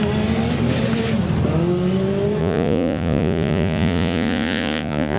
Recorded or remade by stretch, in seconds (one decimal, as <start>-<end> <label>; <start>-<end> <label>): 0.0-2.4 recorded; 2.4-5.2 remade